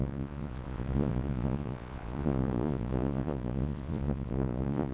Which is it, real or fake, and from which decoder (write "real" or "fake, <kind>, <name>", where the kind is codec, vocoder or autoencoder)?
fake, vocoder, Vocos